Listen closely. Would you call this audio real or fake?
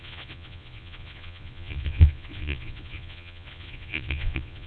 fake